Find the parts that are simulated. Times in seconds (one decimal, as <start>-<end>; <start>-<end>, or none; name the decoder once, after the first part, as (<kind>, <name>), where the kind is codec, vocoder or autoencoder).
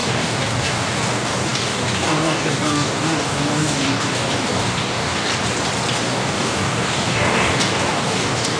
0.0-5.3 (codec, DAC); 6.0-8.6